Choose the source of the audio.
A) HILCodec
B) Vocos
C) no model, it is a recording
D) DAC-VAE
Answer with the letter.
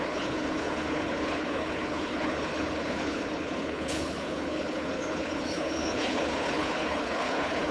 A